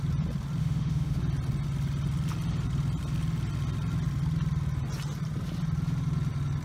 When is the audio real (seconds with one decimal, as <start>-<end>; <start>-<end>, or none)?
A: 0.0-0.6; 1.2-6.6